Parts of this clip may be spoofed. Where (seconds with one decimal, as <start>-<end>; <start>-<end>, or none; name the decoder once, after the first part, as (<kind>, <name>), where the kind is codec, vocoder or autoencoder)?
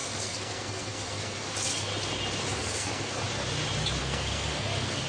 0.0-1.9 (codec, SNAC); 2.5-3.2; 4.0-5.1